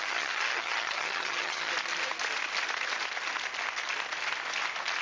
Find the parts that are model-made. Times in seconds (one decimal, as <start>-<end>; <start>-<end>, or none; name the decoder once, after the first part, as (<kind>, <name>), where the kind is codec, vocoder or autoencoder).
0.0-1.7 (vocoder, HiFi-GAN)